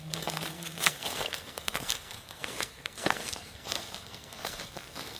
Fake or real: fake